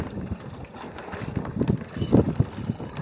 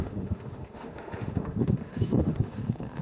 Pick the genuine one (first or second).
first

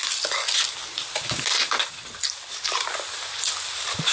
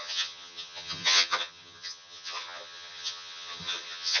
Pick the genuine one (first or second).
first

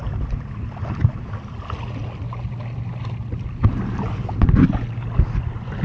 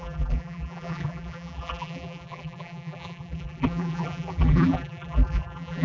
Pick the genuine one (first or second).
first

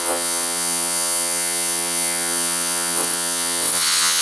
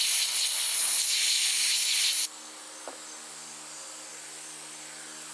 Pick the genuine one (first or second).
second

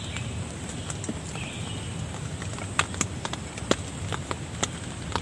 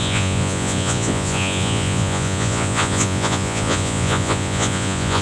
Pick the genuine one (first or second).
first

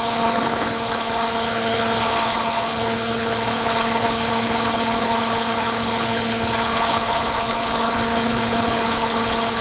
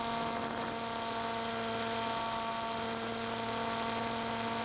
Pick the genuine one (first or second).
second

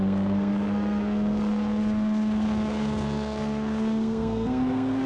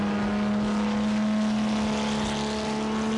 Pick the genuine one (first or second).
second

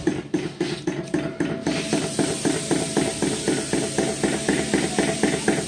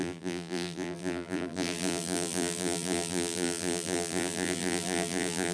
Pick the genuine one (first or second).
first